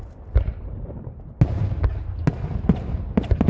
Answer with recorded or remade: recorded